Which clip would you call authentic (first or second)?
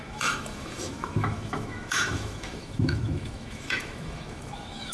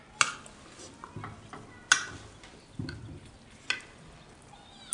second